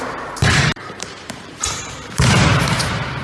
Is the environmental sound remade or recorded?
remade